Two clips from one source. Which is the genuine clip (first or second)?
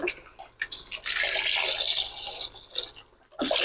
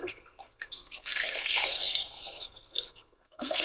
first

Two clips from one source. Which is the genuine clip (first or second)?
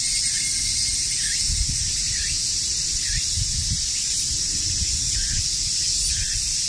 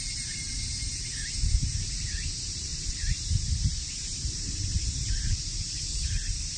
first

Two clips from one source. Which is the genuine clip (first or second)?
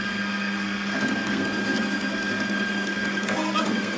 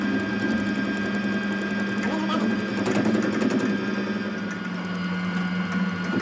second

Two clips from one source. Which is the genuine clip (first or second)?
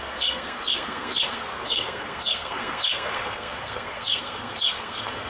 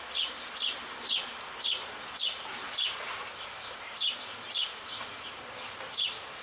second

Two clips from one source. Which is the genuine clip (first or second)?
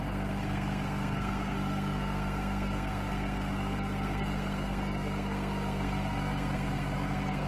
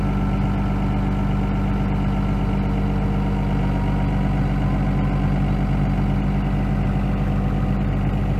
second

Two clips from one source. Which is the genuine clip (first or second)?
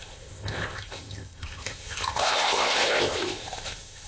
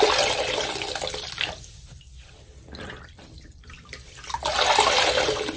second